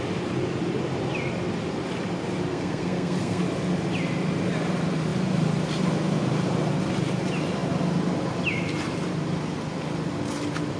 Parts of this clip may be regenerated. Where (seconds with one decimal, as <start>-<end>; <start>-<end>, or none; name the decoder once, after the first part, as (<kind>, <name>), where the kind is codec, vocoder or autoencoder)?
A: 2.5-3.4 (codec, SNAC)